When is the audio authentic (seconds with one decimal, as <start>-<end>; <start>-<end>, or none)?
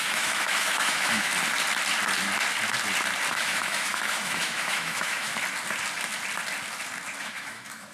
1.3-3.3; 5.3-7.2